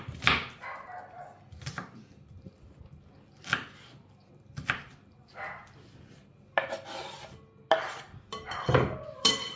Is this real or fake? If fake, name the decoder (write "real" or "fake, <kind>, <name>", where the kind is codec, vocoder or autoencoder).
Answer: real